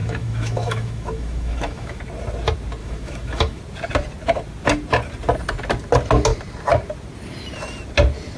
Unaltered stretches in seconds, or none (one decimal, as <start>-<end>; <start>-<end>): 2.0-2.8; 3.6-8.4